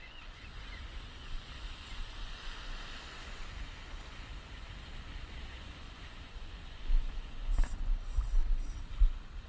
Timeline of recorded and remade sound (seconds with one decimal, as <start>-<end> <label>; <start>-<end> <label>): 0.0-8.4 remade; 8.4-9.5 recorded